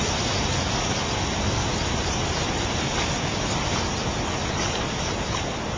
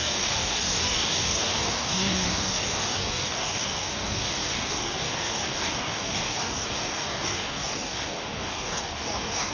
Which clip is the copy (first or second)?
second